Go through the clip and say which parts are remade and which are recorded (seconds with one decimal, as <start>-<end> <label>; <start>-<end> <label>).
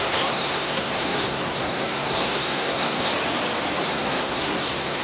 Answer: 0.0-3.1 remade; 3.1-3.9 recorded; 3.9-5.0 remade